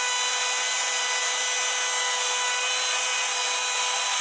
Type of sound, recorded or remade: recorded